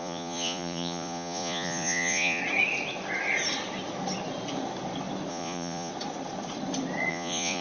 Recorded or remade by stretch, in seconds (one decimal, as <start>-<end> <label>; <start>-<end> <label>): 0.0-2.4 remade; 2.4-5.3 recorded; 5.3-5.9 remade; 5.9-7.1 recorded; 7.1-7.6 remade